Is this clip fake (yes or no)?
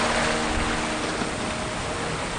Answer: no